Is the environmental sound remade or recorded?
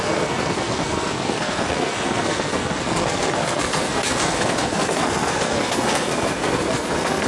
remade